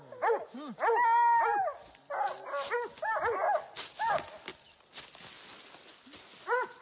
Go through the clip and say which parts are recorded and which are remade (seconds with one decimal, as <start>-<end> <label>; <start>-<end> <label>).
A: 0.0-6.8 recorded